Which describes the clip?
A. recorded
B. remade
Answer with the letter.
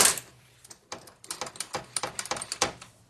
A